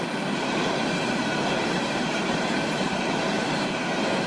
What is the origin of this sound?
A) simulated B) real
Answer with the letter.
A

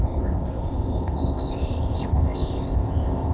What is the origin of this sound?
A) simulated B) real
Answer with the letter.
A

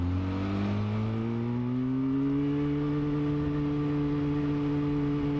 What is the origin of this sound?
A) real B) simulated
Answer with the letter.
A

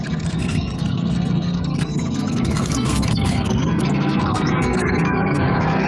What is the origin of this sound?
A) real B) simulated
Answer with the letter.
B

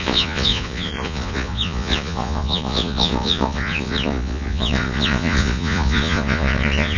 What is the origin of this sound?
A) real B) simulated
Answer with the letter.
B